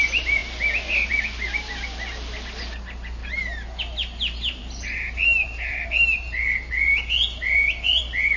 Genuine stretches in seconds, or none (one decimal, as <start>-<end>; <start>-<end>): 0.0-3.2; 3.8-4.6; 8.0-8.4